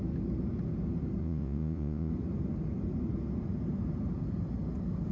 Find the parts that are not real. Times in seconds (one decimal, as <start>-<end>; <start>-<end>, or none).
1.2-2.1